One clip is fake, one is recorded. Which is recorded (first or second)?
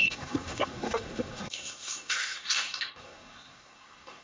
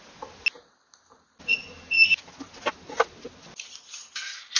second